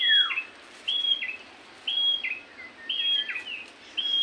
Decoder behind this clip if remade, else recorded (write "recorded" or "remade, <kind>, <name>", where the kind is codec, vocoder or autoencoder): recorded